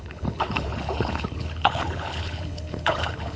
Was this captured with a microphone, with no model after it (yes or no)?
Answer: no